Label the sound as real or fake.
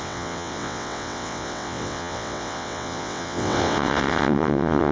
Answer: fake